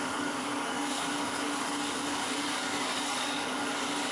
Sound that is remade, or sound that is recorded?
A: remade